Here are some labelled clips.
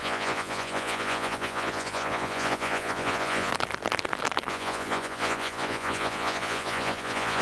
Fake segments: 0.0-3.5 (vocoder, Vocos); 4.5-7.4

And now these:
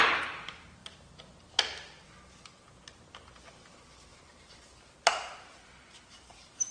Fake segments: 4.1-6.7 (vocoder, BigVGAN v2)

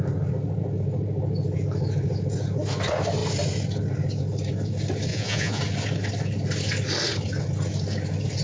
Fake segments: 5.1-5.6 (vocoder, Vocos)